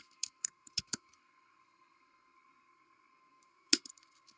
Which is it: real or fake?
fake